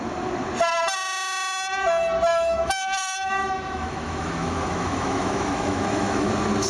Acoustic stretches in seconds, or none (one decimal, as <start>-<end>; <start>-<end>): 0.0-2.3; 6.3-6.7